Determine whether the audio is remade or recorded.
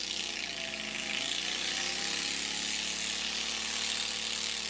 recorded